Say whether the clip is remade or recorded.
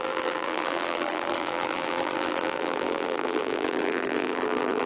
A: remade